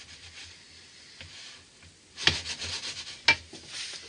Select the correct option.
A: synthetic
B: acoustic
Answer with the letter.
B